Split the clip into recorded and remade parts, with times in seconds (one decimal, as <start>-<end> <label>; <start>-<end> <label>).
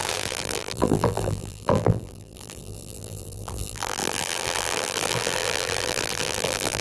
0.0-6.8 remade